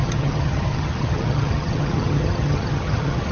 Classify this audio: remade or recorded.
remade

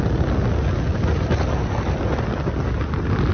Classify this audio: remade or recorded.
recorded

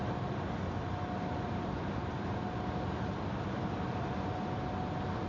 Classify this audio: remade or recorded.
recorded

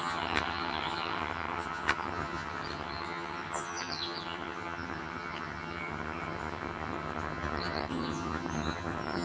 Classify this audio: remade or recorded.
remade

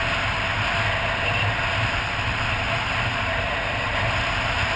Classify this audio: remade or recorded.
recorded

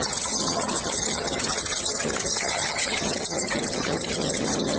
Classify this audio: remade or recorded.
remade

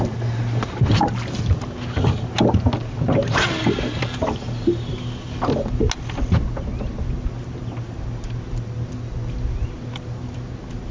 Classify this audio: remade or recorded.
recorded